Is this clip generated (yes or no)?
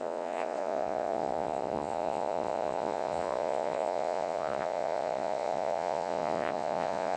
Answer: yes